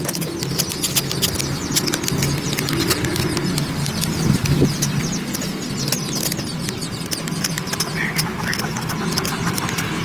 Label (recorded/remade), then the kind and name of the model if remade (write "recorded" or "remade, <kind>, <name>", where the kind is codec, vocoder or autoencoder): recorded